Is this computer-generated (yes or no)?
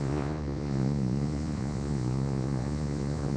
yes